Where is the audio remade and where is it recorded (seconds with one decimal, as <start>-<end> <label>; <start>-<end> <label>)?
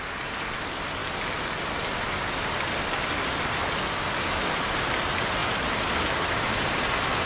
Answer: 0.0-7.3 recorded